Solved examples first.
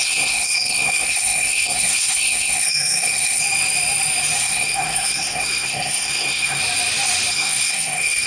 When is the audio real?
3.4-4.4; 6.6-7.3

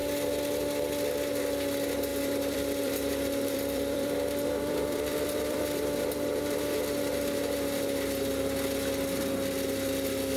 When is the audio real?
0.6-2.1; 6.6-10.4

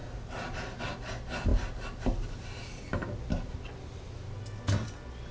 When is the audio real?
0.8-5.3